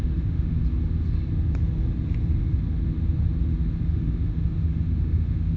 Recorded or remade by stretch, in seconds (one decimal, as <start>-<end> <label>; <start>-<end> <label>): 0.0-0.6 remade; 0.6-3.8 recorded; 3.8-5.6 remade